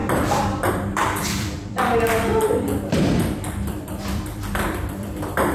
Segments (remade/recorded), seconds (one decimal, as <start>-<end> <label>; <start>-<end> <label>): 0.0-2.3 remade; 2.3-3.7 recorded; 3.7-5.5 remade